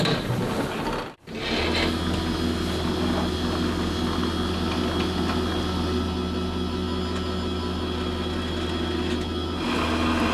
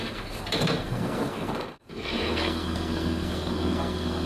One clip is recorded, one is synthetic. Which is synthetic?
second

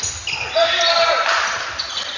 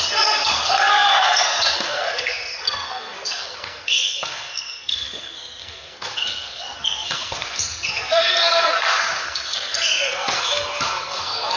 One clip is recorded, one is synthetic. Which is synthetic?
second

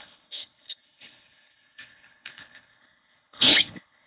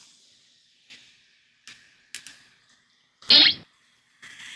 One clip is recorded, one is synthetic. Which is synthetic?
first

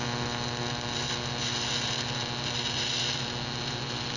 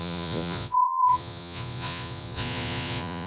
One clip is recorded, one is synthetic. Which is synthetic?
second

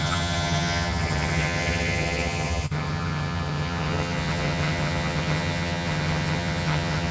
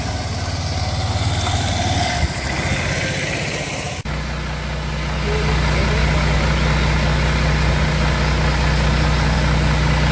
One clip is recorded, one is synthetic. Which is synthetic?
first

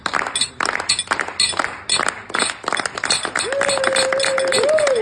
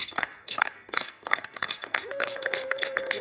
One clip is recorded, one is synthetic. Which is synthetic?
second